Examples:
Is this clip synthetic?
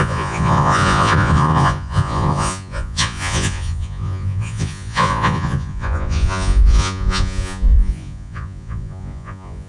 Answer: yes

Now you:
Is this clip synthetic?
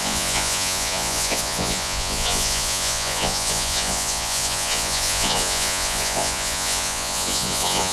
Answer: yes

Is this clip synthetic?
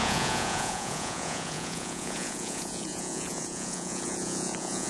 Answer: yes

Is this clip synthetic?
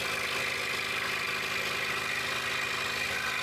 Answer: no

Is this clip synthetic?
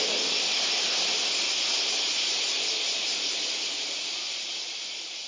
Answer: no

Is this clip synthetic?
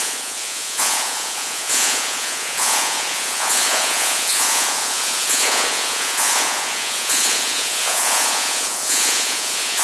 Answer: yes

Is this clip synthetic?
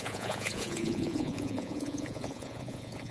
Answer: yes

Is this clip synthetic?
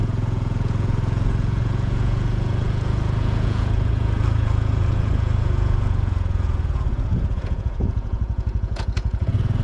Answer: yes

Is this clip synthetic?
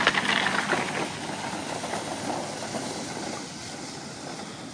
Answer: no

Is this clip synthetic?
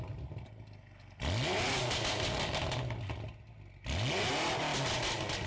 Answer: no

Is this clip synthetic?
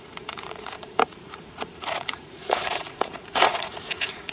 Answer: yes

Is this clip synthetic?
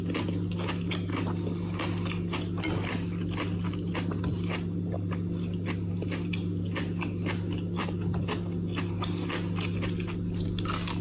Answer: no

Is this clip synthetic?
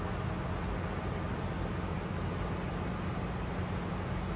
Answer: no